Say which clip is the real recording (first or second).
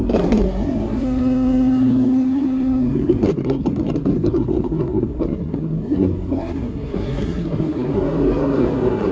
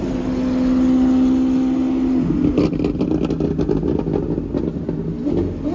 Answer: second